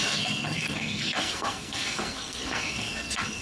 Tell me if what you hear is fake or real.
fake